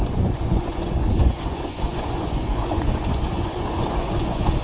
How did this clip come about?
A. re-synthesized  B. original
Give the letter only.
A